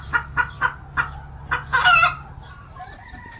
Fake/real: real